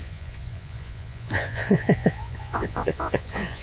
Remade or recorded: remade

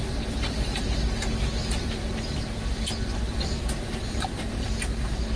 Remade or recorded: remade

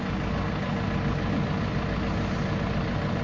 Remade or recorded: recorded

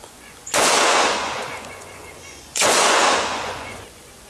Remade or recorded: remade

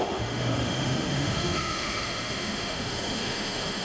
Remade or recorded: remade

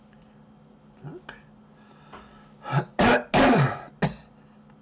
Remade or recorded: recorded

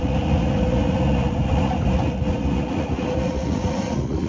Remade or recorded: remade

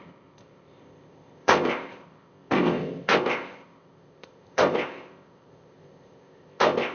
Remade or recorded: remade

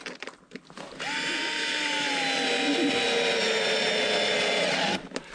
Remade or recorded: recorded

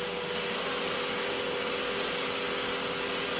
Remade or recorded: recorded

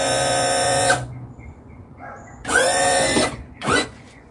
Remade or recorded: remade